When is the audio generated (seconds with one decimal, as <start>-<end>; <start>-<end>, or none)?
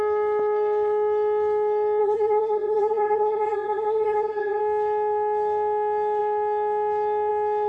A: 2.0-4.6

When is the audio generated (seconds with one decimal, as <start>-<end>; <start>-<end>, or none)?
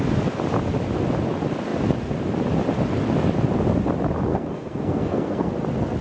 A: 4.3-5.5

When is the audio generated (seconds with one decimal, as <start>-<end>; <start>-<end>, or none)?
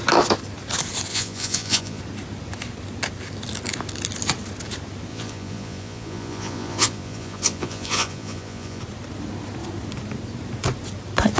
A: 1.1-2.0; 5.1-8.8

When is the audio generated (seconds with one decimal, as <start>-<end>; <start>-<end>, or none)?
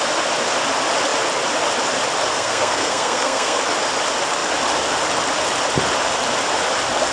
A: 2.3-3.6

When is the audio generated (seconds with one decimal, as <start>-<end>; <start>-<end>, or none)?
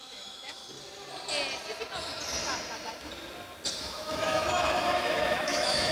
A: 0.0-0.6; 3.8-5.9